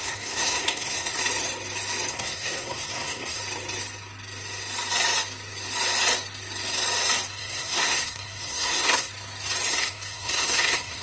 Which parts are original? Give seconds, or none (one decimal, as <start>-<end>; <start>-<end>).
1.2-2.1; 3.4-7.3; 9.1-9.7